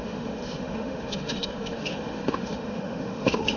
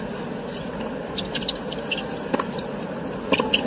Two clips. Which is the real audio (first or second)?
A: second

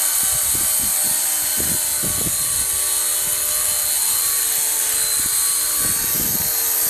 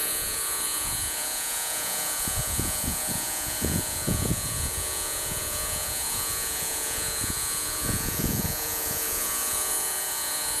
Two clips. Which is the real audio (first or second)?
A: first